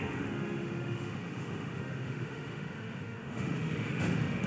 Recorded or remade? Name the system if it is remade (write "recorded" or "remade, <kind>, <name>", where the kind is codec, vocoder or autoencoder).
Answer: remade, autoencoder, DAC-VAE